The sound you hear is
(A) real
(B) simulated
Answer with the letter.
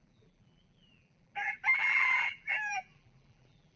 B